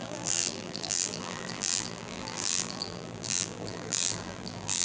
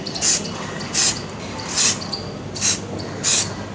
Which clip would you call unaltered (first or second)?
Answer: second